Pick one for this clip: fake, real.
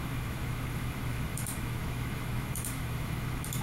fake